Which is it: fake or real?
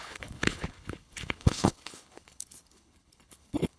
fake